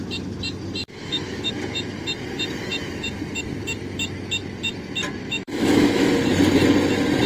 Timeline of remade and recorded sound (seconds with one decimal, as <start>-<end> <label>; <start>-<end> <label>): 0.0-0.8 recorded; 0.8-1.5 remade; 1.5-5.2 recorded; 5.2-6.2 remade; 6.2-7.3 recorded